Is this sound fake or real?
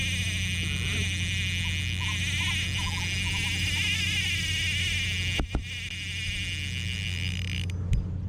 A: real